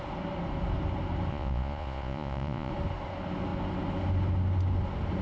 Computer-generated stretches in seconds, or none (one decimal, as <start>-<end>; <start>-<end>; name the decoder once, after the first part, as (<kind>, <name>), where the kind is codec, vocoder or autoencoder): 1.3-2.7 (vocoder, Vocos)